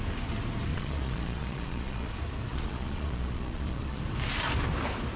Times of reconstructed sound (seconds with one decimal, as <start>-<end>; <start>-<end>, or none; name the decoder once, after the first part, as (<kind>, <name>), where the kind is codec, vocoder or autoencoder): 0.7-2.1 (vocoder, Vocos); 2.5-4.0